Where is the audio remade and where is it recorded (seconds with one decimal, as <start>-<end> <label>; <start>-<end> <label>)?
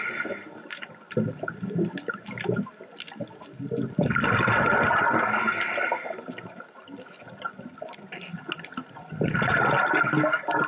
0.0-10.7 recorded